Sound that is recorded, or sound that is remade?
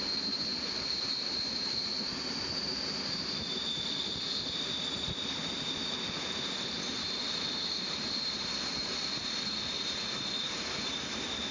remade